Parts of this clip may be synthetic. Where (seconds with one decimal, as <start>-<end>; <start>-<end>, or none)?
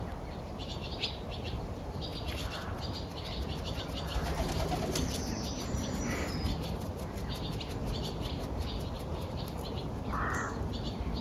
none